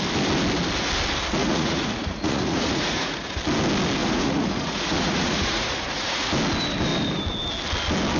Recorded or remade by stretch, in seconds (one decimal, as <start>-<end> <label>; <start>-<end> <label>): 0.0-1.4 recorded; 1.4-3.4 remade; 3.4-4.0 recorded; 4.0-6.3 remade; 6.3-8.2 recorded